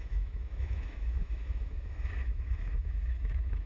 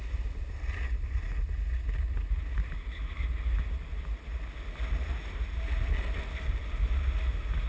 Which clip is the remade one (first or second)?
first